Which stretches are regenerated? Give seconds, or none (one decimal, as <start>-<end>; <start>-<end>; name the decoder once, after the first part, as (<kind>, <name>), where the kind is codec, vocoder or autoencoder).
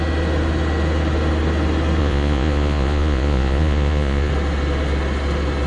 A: 2.0-4.3 (vocoder, Vocos)